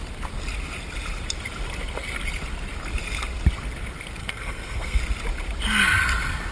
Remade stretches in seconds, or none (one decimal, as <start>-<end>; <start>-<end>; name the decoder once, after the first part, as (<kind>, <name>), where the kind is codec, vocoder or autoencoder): 4.2-5.0 (codec, SNAC)